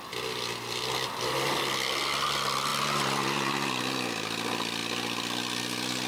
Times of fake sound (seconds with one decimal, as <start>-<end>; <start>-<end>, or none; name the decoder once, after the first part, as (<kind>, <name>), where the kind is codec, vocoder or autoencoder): none